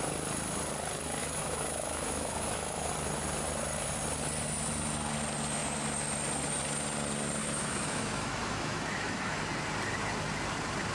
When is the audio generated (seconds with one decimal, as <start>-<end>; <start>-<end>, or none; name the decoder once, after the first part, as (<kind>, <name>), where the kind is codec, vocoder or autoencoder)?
1.2-2.9 (autoencoder, DAC-VAE); 7.4-9.4